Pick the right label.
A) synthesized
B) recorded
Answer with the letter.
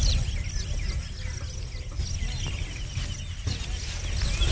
B